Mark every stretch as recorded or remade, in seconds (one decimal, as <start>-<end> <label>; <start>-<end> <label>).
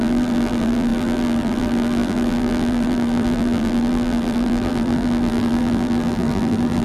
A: 0.0-6.8 remade